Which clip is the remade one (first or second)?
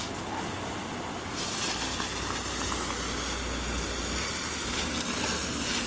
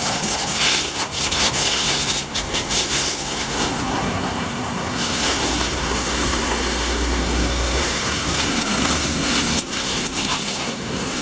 second